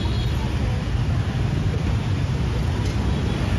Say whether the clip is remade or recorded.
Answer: recorded